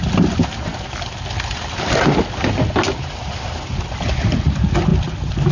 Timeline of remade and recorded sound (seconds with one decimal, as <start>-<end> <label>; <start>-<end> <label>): 0.0-5.5 recorded